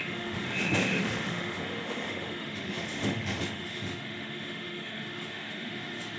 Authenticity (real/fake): fake